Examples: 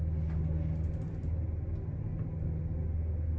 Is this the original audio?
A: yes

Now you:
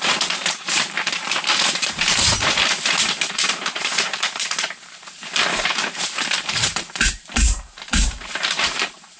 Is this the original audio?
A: no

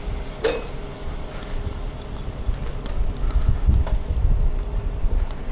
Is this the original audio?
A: yes